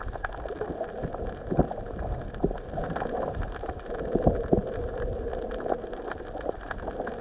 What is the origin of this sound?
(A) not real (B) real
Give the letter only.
B